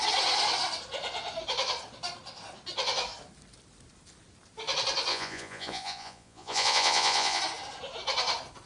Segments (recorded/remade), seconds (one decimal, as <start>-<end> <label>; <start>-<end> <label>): 0.0-5.1 recorded; 5.1-7.4 remade; 7.4-8.7 recorded